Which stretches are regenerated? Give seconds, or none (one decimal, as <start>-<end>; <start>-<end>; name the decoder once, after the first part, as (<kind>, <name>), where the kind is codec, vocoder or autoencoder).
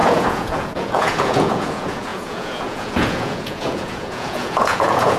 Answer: 0.0-5.2 (vocoder, Vocos)